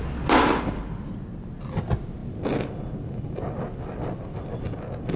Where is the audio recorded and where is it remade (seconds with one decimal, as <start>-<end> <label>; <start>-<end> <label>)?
0.0-5.2 recorded